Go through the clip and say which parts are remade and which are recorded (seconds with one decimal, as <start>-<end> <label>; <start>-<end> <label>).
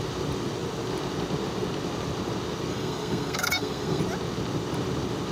0.0-2.7 recorded; 2.7-4.0 remade; 4.0-5.3 recorded